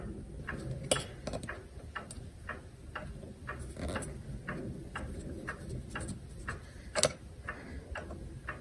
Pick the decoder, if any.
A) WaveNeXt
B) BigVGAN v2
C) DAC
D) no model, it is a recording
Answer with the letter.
D